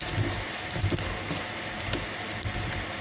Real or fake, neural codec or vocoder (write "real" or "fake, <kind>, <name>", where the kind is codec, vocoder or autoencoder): real